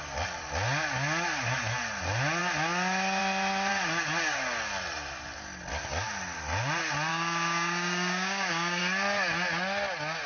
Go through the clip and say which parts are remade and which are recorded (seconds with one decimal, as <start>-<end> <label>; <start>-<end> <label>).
0.0-7.1 recorded; 7.1-8.8 remade; 8.8-10.3 recorded